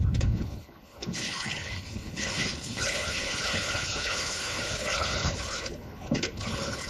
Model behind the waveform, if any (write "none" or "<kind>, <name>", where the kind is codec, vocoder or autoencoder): codec, HILCodec